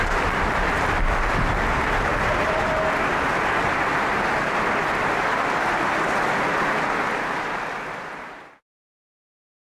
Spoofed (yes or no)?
no